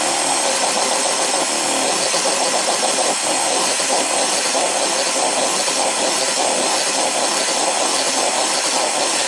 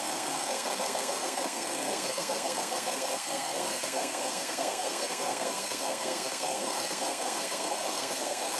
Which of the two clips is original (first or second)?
first